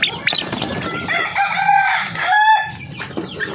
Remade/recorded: recorded